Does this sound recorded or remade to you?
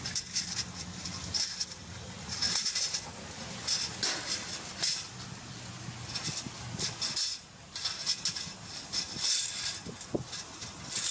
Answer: recorded